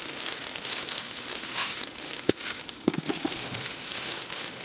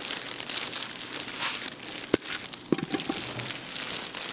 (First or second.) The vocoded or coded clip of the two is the first